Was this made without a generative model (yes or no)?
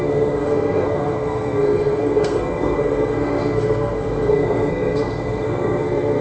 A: no